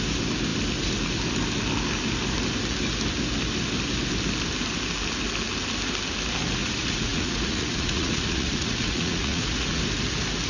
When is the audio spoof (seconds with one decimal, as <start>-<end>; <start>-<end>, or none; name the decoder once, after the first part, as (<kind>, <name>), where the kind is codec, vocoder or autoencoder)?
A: 6.6-9.8 (vocoder, Vocos)